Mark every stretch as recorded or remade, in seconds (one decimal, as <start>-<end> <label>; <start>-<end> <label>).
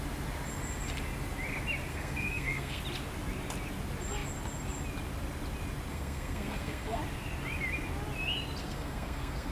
0.0-1.9 recorded; 1.9-2.8 remade; 2.8-5.9 recorded; 5.9-7.0 remade; 7.0-8.6 recorded; 8.6-9.5 remade